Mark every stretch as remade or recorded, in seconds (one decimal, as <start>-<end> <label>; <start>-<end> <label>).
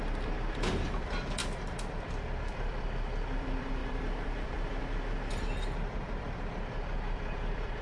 0.0-1.4 remade; 1.4-1.9 recorded; 1.9-7.8 remade